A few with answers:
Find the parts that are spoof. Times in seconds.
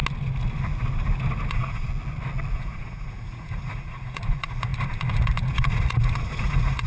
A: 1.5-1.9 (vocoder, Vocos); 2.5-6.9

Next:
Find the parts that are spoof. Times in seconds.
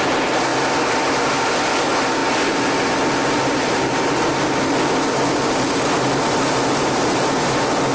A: none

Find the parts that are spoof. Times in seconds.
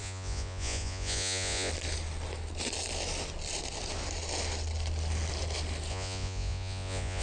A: 0.0-1.7 (vocoder, Vocos); 5.9-7.2